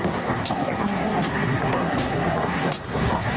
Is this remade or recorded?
remade